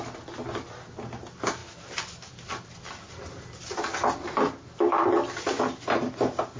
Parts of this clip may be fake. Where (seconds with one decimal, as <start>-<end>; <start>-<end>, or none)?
none